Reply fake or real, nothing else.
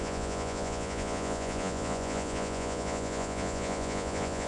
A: fake